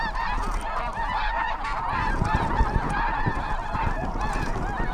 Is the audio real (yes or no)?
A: yes